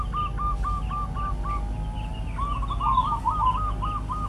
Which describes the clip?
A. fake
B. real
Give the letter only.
B